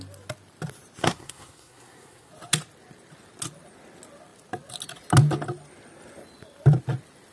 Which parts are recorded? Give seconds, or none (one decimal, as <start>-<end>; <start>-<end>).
0.0-1.0; 2.3-7.3